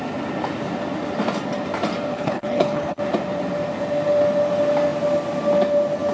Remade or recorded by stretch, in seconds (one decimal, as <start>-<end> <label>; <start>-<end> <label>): 0.0-2.1 recorded; 2.1-3.0 remade; 3.0-6.1 recorded